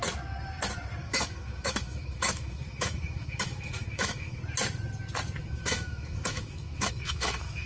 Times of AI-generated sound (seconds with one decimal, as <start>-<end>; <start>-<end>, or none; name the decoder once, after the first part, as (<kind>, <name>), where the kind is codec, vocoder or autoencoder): 1.0-4.4 (autoencoder, DAC-VAE); 5.4-7.7